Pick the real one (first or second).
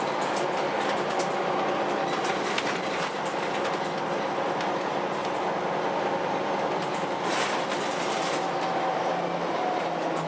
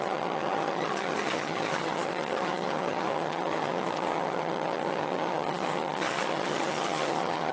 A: first